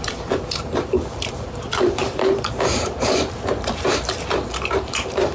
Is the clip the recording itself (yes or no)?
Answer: no